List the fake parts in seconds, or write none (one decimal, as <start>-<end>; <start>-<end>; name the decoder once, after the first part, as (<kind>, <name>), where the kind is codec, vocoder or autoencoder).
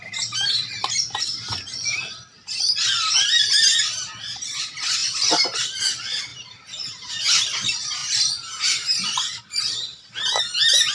6.3-7.1 (vocoder, BigVGAN v2)